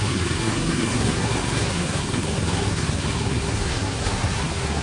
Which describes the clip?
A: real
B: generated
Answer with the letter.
B